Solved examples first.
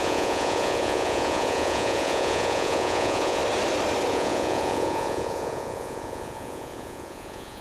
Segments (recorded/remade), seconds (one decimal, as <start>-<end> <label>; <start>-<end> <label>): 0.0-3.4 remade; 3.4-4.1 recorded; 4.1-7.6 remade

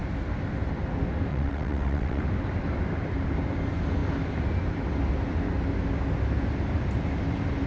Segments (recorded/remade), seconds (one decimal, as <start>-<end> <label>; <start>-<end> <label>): 0.0-1.3 recorded; 1.3-2.2 remade; 2.2-7.7 recorded

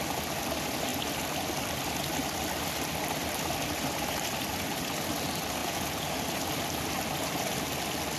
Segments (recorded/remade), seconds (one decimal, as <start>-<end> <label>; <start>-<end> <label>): 0.0-5.6 recorded; 5.6-6.2 remade; 6.2-8.2 recorded

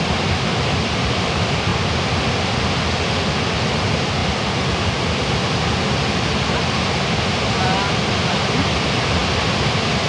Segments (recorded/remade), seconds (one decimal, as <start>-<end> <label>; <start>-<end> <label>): 0.0-1.7 remade; 1.7-3.8 recorded; 3.8-4.2 remade; 4.2-8.4 recorded; 8.4-10.1 remade